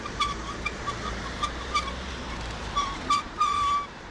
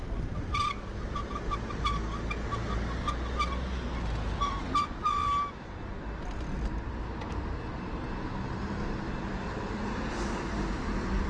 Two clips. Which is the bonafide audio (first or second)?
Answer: second